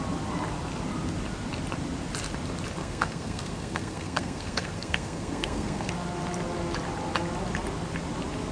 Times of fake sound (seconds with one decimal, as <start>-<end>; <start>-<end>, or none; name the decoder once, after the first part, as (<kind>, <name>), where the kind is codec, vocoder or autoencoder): 2.8-5.9 (codec, SNAC)